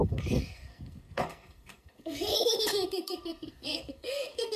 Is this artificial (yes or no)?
yes